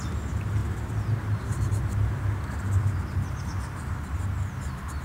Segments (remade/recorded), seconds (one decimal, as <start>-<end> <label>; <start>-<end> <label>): 0.0-5.0 recorded